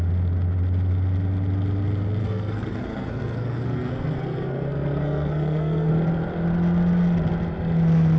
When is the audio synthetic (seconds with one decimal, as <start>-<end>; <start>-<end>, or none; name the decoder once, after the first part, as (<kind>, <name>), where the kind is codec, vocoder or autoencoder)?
2.2-5.9 (codec, SNAC)